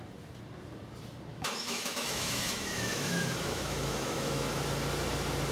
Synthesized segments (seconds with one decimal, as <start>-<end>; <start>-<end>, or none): 1.3-4.6